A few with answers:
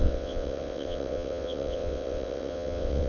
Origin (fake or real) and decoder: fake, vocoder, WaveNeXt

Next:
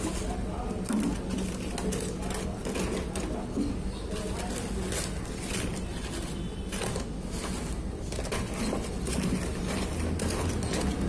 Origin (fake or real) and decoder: real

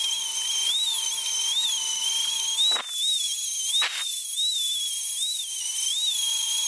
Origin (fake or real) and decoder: real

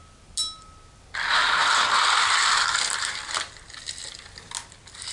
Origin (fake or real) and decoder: real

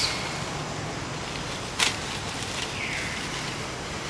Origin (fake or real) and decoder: real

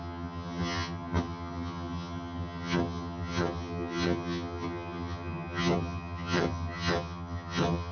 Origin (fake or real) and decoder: fake, vocoder, HiFi-GAN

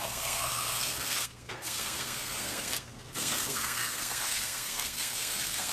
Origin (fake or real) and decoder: fake, codec, SNAC